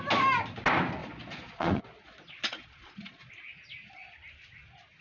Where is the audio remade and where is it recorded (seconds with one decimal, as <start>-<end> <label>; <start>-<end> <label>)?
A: 0.0-1.0 recorded; 1.0-3.3 remade; 3.3-5.0 recorded